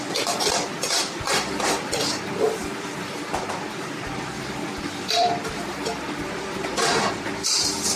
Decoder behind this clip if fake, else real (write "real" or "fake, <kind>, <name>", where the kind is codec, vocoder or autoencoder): fake, vocoder, BigVGAN v2